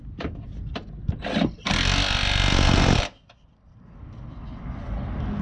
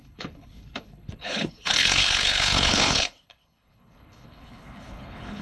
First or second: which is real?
first